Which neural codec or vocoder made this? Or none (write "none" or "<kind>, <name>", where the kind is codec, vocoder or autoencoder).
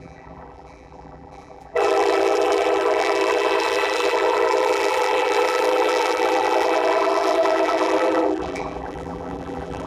vocoder, BigVGAN v2